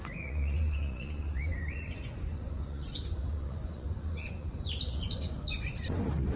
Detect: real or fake fake